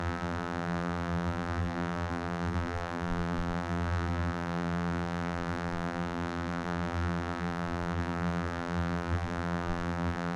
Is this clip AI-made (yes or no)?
yes